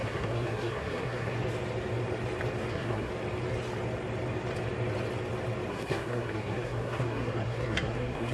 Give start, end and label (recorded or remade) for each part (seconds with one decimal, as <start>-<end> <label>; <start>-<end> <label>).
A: 0.0-1.4 remade; 1.4-2.7 recorded; 2.7-3.1 remade; 3.1-5.7 recorded; 5.7-8.3 remade